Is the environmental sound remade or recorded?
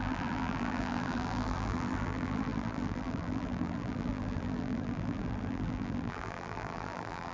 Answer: remade